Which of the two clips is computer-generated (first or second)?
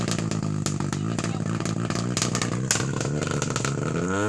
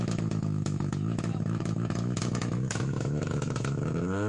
second